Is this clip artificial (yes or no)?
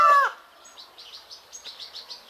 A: no